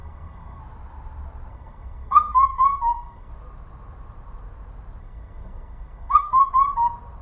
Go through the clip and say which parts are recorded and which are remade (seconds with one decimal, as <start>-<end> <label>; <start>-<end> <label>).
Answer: 0.0-0.6 remade; 0.6-1.5 recorded; 1.5-3.3 remade; 3.3-5.0 recorded; 5.0-6.5 remade; 6.5-7.2 recorded